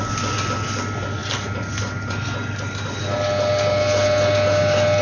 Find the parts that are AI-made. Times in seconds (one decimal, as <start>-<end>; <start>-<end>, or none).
none